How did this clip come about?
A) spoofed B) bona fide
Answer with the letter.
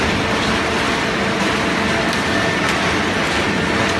B